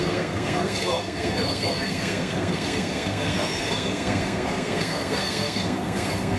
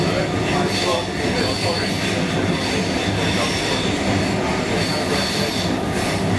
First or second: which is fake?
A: first